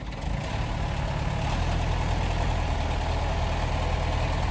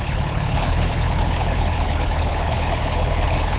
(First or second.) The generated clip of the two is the second